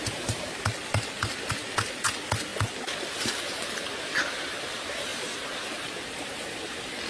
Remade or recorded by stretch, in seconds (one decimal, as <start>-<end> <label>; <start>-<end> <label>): 0.0-7.1 recorded